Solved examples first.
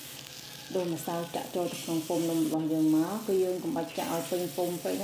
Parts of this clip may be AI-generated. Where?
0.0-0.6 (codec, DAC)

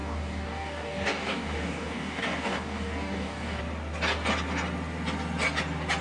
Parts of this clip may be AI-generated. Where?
0.0-3.6 (codec, DAC)

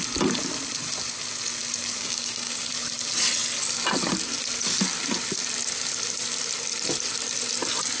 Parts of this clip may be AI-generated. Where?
2.0-2.7 (codec, DAC)

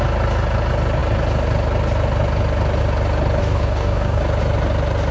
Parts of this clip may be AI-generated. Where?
3.4-4.2 (codec, DAC)

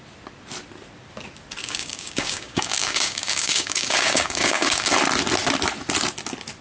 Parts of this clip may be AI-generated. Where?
1.6-4.9 (codec, DAC)